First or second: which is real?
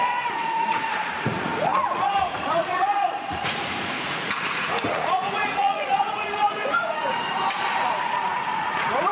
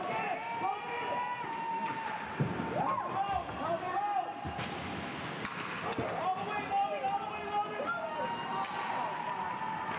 second